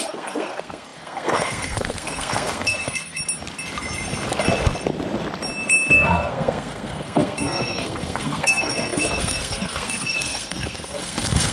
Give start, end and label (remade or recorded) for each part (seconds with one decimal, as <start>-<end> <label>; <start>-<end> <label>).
0.0-3.2 remade; 3.2-5.9 recorded; 5.9-11.5 remade